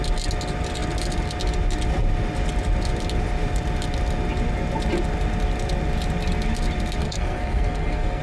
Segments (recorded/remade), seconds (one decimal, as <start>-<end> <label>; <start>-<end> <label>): 0.0-7.0 recorded; 7.0-8.2 remade